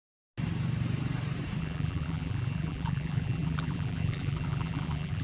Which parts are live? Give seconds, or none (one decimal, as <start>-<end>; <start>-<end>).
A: 0.0-1.6